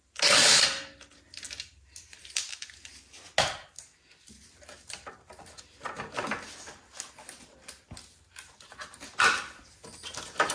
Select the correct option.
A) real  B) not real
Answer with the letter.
A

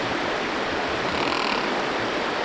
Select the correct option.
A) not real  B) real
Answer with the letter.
B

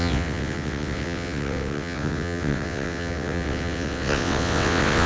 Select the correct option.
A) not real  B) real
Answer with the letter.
A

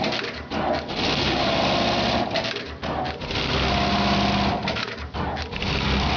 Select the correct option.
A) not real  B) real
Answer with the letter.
B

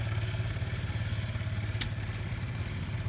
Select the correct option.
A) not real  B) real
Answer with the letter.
B